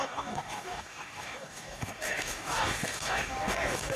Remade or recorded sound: remade